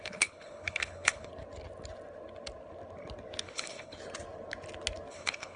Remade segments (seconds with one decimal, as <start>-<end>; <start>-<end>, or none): 0.0-1.3; 3.4-4.0; 5.1-5.6